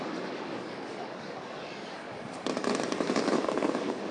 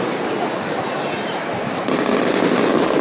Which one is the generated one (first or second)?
first